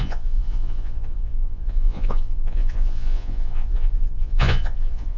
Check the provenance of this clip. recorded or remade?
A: remade